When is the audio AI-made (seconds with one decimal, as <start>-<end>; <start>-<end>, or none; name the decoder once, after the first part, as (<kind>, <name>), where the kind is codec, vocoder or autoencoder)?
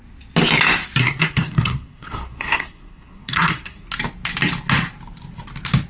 1.0-3.9 (codec, SNAC)